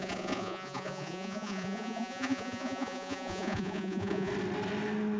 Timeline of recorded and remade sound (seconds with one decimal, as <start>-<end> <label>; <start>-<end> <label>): 0.0-4.3 remade; 4.3-5.2 recorded